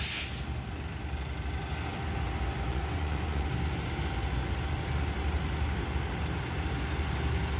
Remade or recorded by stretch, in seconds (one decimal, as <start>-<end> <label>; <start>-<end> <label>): 0.0-2.7 recorded; 2.7-3.5 remade; 3.5-7.6 recorded